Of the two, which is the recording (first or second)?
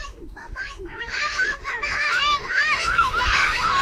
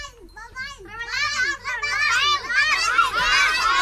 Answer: second